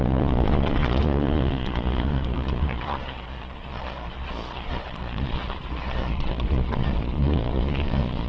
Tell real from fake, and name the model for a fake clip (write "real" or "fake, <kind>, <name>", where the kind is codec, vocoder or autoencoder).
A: fake, vocoder, Vocos